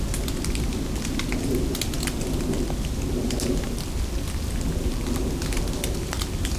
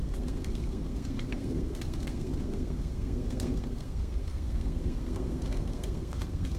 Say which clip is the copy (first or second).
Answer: second